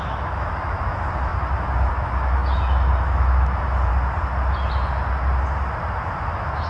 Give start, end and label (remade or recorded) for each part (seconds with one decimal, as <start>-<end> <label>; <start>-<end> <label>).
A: 0.0-3.9 remade; 3.9-6.2 recorded; 6.2-6.7 remade